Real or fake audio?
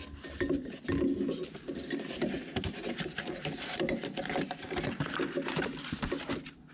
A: real